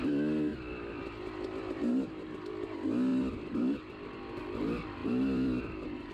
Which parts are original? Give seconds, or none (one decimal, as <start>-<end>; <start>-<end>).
0.0-0.5; 1.0-3.1; 4.6-5.0; 5.6-6.1

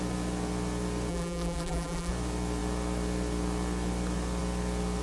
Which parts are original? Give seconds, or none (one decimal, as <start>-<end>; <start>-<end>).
0.0-1.1; 2.1-5.0

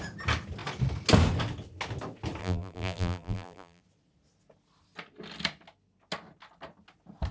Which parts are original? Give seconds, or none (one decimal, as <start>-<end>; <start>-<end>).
0.0-2.4; 3.8-7.3

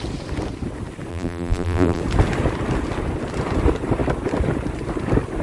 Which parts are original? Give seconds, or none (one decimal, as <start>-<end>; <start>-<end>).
0.0-1.1; 2.0-5.4

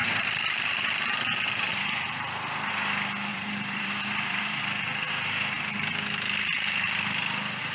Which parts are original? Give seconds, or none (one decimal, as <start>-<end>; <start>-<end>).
0.9-1.7; 2.7-3.3; 4.6-7.7

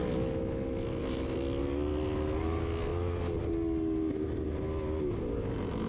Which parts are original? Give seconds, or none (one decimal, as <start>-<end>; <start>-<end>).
0.0-5.9

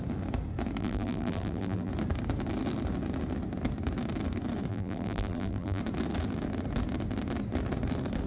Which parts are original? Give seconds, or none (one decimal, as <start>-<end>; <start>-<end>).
0.0-0.8; 1.9-4.7; 5.8-8.3

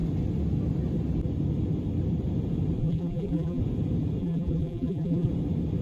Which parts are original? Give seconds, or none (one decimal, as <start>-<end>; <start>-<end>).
0.0-2.8; 3.6-4.2; 5.3-5.8